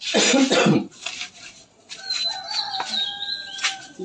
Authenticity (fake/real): real